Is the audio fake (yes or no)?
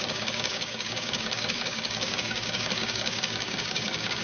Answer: yes